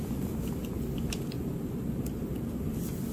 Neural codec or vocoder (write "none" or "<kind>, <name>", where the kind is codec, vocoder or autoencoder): none